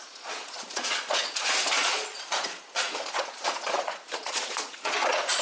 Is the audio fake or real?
fake